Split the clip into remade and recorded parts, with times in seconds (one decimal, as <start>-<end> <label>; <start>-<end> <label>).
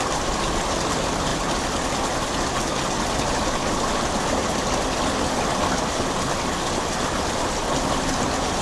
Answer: 0.0-8.6 recorded